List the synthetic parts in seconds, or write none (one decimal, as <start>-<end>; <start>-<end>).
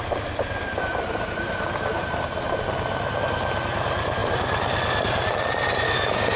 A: 0.9-1.5